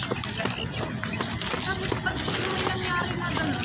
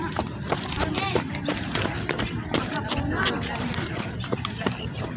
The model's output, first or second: second